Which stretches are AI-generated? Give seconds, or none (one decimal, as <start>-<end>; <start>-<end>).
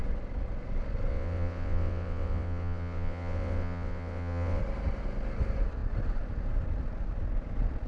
1.1-4.6